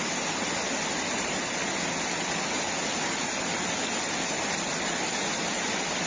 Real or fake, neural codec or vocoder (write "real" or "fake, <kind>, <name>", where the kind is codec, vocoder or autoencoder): real